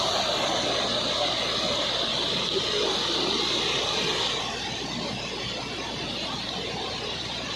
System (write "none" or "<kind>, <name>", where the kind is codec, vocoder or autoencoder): none